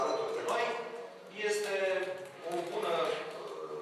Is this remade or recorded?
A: remade